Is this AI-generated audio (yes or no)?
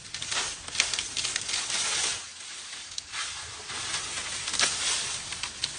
no